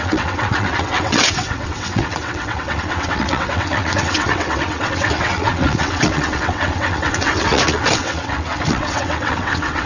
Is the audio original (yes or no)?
no